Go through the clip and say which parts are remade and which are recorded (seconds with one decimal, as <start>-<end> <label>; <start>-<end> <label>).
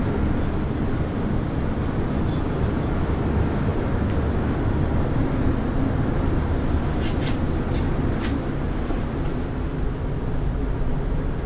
0.0-11.5 recorded